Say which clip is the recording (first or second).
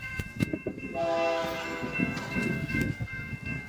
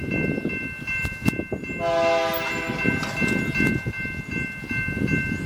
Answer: second